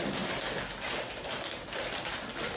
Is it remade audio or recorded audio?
recorded